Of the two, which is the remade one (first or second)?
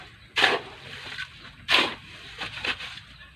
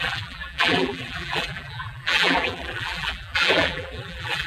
second